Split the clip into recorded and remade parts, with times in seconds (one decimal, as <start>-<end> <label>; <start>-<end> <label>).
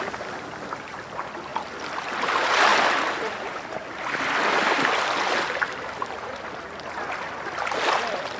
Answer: 0.0-8.4 recorded